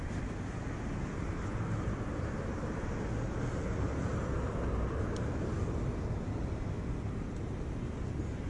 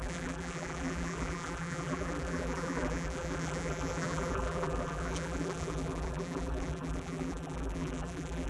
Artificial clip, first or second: second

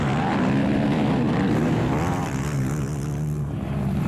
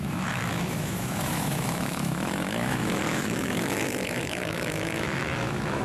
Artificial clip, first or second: second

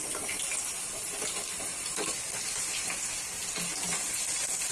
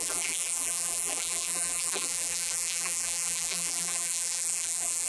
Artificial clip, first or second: second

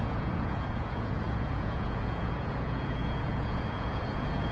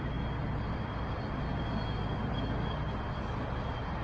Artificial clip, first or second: first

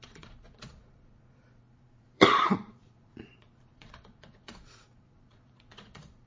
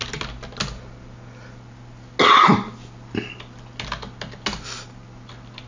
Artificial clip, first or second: first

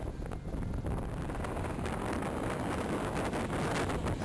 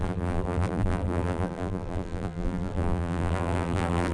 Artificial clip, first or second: second